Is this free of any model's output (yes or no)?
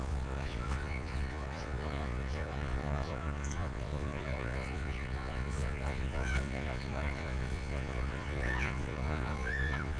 no